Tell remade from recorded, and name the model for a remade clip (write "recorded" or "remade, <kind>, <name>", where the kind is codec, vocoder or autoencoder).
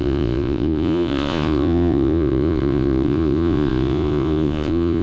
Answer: remade, vocoder, Vocos